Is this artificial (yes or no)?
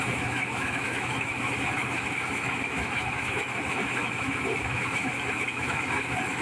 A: yes